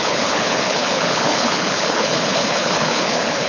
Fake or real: fake